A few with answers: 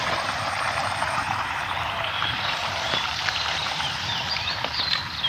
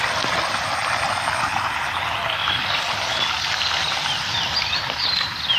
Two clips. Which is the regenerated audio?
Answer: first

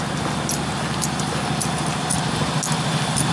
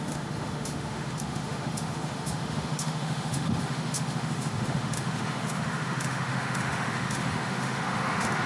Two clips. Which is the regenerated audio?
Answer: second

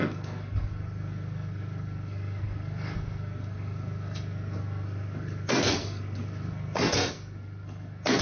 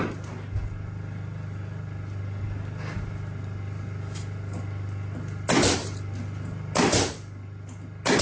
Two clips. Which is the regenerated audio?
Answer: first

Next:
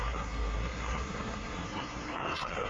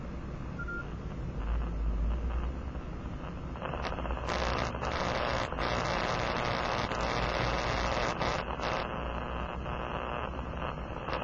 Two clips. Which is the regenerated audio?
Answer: first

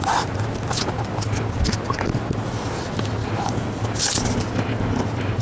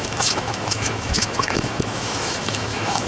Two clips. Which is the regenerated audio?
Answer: second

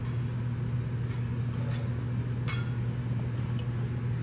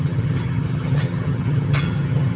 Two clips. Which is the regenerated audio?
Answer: second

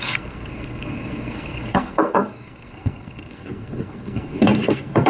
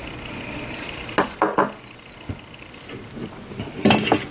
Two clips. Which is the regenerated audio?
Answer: first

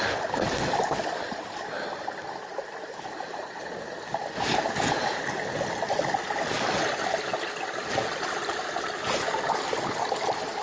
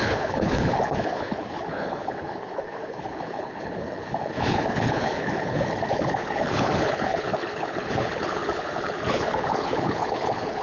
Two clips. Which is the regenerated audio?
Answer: second